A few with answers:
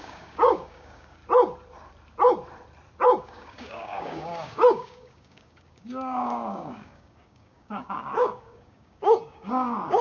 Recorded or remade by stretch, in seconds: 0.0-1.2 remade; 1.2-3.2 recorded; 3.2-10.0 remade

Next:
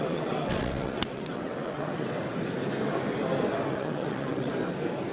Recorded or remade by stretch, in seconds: 0.0-2.2 remade; 2.2-3.7 recorded; 3.7-4.5 remade; 4.5-5.1 recorded